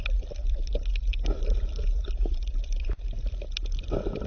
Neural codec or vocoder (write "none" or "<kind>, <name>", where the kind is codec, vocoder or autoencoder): none